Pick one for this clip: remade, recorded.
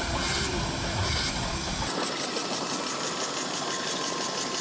recorded